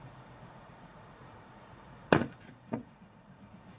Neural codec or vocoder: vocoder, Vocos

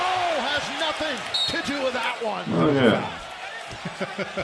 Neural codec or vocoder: none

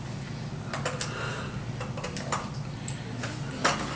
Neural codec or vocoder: none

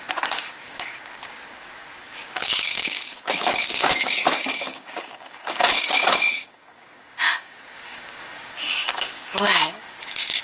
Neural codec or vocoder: codec, DAC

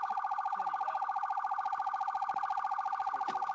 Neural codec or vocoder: none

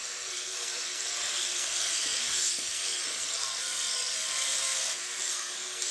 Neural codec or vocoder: codec, SNAC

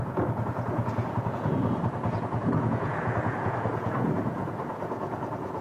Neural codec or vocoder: vocoder, Vocos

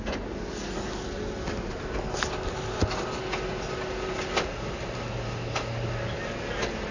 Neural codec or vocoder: none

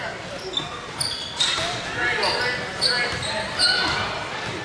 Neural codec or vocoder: none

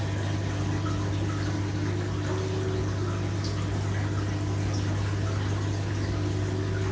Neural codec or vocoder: none